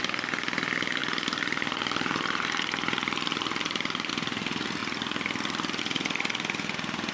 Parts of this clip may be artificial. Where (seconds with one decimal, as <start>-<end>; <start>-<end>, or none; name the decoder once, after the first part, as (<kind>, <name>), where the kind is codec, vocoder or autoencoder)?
1.0-4.1 (vocoder, BigVGAN v2)